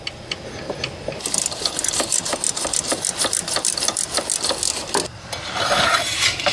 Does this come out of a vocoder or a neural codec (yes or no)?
no